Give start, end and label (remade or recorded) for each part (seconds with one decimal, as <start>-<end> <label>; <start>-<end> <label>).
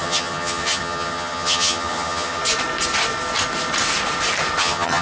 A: 0.0-2.4 remade; 2.4-4.6 recorded; 4.6-5.0 remade